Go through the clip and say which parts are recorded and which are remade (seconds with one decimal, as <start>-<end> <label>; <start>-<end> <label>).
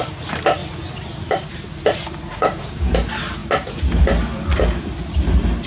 0.0-2.3 recorded; 2.3-2.9 remade; 2.9-5.7 recorded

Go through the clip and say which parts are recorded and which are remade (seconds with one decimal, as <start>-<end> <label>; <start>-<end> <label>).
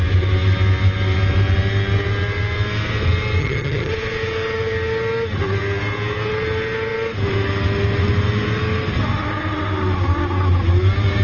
0.0-3.4 recorded; 3.4-3.9 remade; 3.9-11.2 recorded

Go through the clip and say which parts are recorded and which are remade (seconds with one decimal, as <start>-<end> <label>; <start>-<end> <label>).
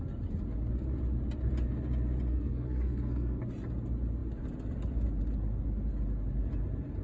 0.0-2.3 recorded; 2.3-3.4 remade; 3.4-7.0 recorded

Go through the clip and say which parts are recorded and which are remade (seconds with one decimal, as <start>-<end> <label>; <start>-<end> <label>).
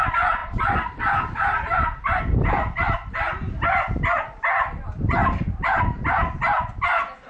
0.0-7.3 recorded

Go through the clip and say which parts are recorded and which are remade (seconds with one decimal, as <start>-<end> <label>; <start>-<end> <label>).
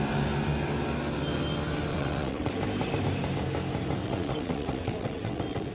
0.0-1.9 recorded; 1.9-2.6 remade; 2.6-4.0 recorded; 4.0-5.7 remade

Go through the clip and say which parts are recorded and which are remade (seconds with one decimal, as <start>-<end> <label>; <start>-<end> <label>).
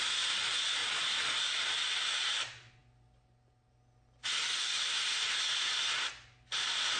0.0-0.8 recorded; 0.8-1.3 remade; 1.3-7.0 recorded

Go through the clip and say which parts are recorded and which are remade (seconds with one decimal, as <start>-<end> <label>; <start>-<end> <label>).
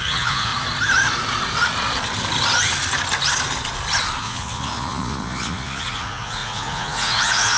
0.0-0.5 remade; 0.5-4.2 recorded; 4.2-7.6 remade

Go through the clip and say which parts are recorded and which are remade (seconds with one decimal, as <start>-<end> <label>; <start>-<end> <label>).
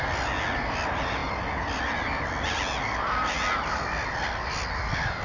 0.0-5.2 recorded